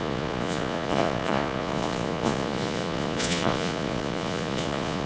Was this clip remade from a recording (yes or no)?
yes